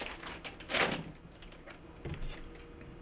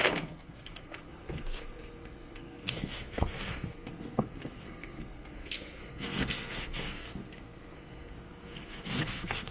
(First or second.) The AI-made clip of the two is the second